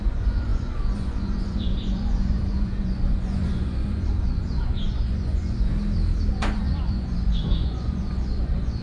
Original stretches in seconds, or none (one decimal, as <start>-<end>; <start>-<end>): 5.7-6.3